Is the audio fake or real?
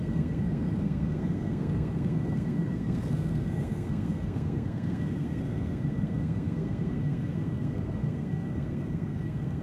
fake